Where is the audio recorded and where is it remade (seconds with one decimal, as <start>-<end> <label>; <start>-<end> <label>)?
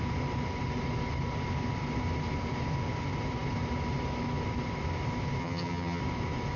0.0-5.4 recorded; 5.4-6.0 remade; 6.0-6.6 recorded